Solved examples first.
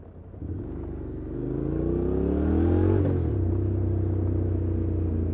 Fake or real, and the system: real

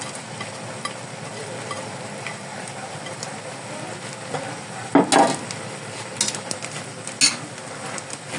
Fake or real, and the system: real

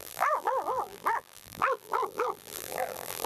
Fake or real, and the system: fake, vocoder, BigVGAN v2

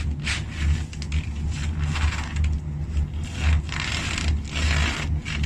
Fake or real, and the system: real